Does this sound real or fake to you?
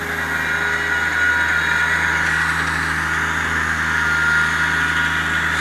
real